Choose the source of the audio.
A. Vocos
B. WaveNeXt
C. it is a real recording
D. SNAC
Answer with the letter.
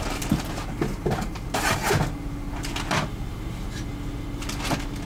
C